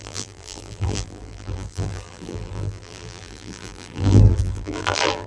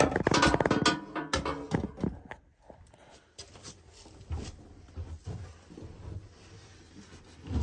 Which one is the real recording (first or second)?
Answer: second